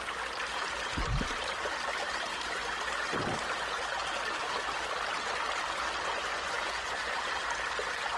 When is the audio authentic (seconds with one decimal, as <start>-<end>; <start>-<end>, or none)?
0.0-6.3; 7.3-8.2